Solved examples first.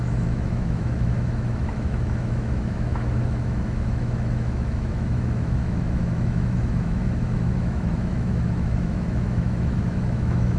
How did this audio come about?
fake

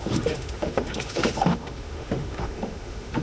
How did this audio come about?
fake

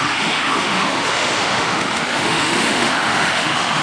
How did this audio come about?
fake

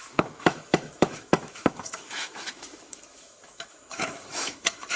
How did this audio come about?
fake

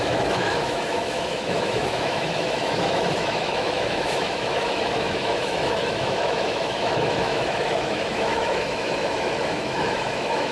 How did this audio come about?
fake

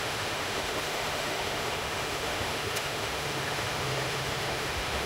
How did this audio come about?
fake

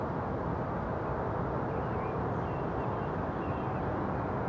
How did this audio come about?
real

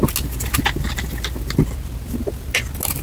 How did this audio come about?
real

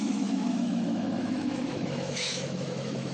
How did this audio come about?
fake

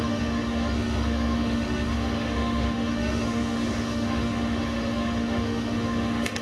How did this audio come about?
fake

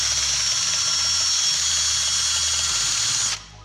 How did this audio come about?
real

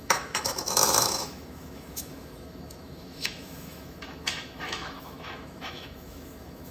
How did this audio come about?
fake